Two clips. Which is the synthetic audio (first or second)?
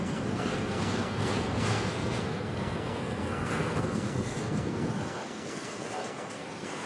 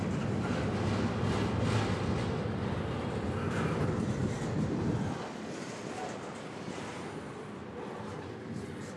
first